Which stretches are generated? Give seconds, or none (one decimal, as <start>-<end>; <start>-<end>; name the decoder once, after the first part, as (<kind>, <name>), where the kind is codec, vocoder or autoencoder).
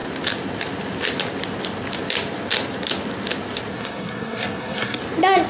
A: 3.7-5.0 (codec, SNAC)